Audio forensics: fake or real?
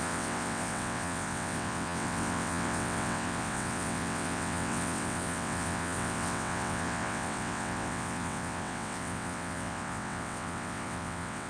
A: fake